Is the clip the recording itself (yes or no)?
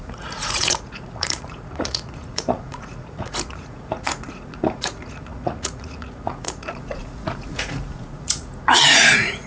no